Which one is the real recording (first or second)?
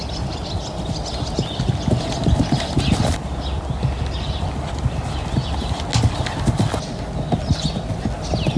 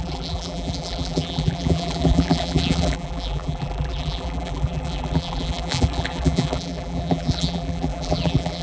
first